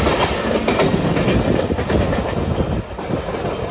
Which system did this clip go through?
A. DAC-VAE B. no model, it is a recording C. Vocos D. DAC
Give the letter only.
B